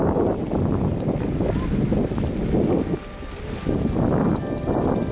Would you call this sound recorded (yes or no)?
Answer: yes